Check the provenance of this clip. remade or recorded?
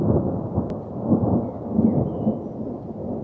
recorded